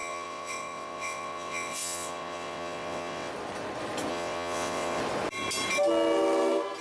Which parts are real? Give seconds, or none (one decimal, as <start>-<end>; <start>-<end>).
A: 3.3-4.1; 5.0-6.8